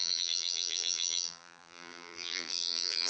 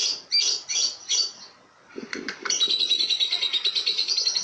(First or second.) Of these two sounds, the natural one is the second